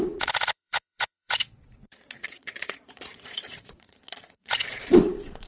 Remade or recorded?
remade